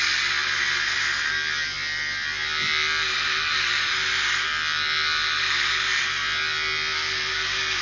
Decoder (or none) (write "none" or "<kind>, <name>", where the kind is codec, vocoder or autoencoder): vocoder, BigVGAN v2